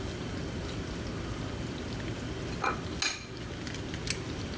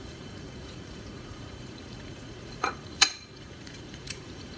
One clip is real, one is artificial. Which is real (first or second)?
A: first